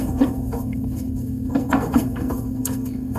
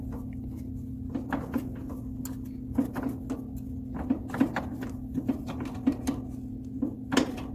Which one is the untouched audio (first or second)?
second